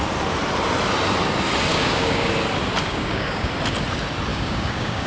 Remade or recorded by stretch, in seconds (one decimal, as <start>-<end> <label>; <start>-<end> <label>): 0.0-1.7 recorded; 1.7-2.3 remade; 2.3-2.8 recorded; 2.8-3.5 remade; 3.5-4.3 recorded; 4.3-5.1 remade